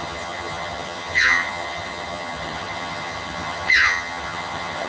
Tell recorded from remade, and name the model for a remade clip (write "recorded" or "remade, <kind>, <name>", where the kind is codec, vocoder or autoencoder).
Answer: remade, vocoder, HiFi-GAN